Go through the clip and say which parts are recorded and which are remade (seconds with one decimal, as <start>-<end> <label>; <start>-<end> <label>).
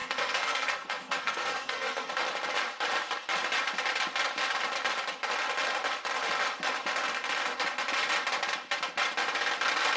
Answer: 0.0-2.1 remade; 2.1-10.0 recorded